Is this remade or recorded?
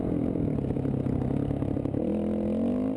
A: recorded